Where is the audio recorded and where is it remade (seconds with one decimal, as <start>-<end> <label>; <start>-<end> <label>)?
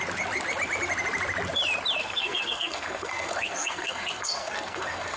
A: 0.0-2.0 recorded; 2.0-5.2 remade